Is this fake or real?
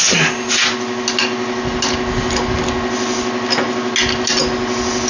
real